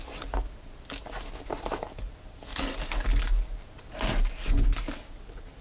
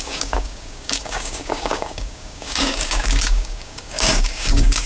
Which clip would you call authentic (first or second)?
first